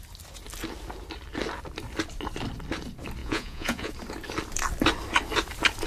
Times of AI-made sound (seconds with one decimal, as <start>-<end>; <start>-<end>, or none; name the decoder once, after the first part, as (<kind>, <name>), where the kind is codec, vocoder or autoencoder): 3.2-3.9 (vocoder, Vocos)